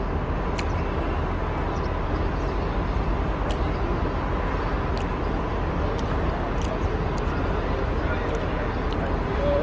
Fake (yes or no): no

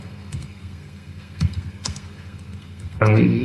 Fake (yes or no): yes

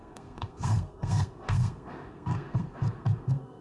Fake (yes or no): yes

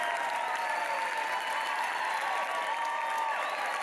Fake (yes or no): no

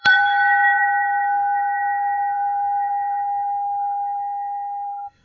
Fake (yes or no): yes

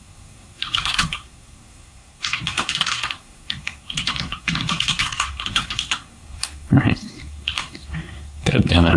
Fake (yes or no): yes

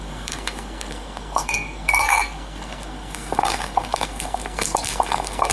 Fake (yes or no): yes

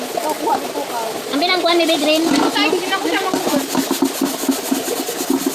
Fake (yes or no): no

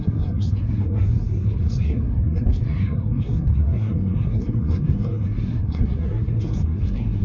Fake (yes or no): yes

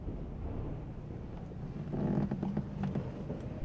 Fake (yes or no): no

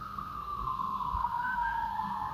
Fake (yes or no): yes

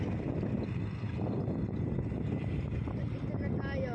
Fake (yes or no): no